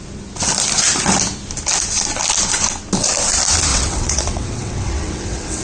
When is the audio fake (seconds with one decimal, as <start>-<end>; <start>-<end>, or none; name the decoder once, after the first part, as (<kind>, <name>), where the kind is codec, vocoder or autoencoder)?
3.7-5.6 (vocoder, WaveNeXt)